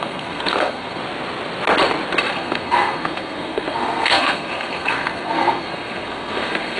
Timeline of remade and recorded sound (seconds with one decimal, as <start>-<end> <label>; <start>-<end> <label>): 0.0-1.0 remade; 1.0-2.3 recorded; 2.3-6.8 remade